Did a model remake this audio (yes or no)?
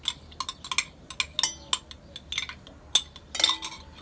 no